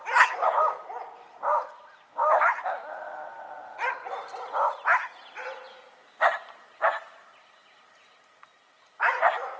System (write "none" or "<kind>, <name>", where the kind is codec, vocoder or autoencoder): none